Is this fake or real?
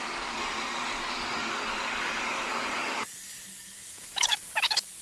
fake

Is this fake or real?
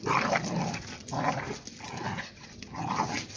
real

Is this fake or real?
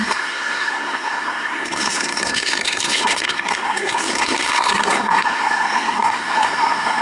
fake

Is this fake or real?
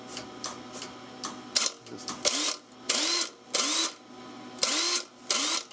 real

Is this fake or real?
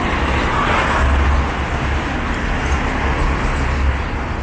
real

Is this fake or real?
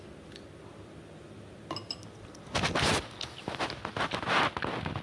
real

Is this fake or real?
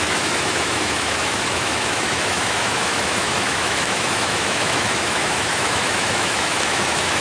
fake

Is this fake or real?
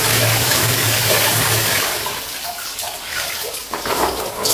fake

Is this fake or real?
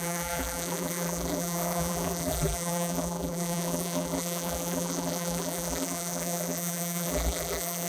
fake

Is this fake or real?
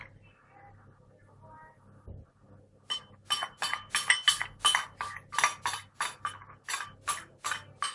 real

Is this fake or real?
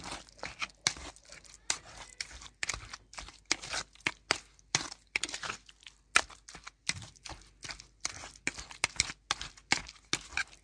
real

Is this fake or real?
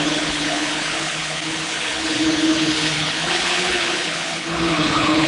fake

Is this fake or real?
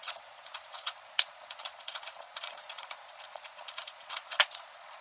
fake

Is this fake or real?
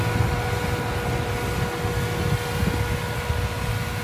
real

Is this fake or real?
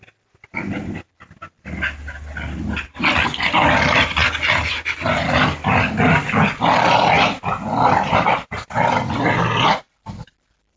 real